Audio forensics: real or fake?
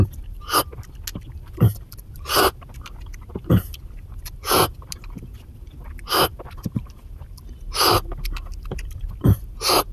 real